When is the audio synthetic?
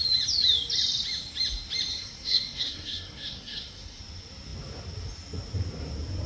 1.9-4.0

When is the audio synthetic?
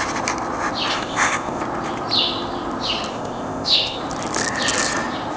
0.9-1.6; 3.1-4.0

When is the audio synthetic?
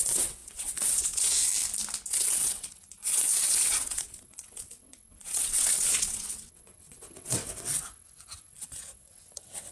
0.0-1.5; 2.1-9.7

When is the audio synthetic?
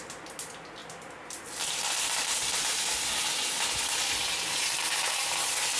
0.8-3.8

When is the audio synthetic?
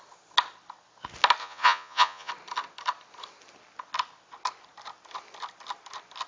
1.4-2.3